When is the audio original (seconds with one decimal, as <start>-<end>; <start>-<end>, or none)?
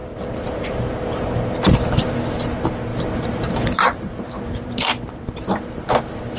1.6-2.9; 6.0-6.4